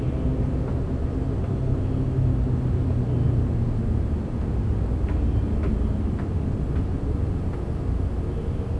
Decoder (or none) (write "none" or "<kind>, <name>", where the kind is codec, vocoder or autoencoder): none